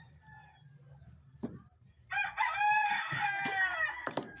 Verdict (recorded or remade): remade